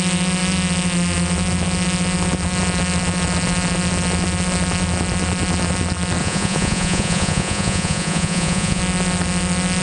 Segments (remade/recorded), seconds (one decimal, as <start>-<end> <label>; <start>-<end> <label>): 0.0-6.2 recorded; 6.2-8.8 remade; 8.8-9.8 recorded